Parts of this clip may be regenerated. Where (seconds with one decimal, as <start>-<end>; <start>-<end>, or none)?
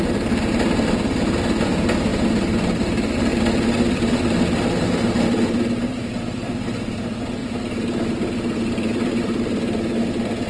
0.0-10.5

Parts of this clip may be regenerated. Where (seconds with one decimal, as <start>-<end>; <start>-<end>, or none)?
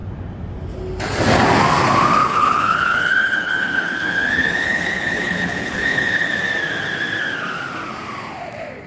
2.2-6.4